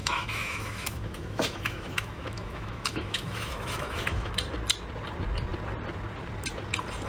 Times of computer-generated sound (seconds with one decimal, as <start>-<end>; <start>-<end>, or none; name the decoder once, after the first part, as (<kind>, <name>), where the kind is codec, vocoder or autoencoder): 0.0-4.3 (autoencoder, DAC-VAE)